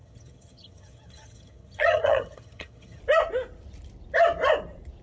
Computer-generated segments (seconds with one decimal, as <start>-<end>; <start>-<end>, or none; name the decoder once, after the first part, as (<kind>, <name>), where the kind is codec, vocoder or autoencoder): 0.0-3.0 (vocoder, HiFi-GAN)